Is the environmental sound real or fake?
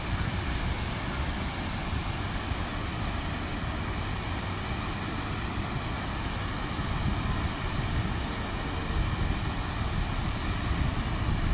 real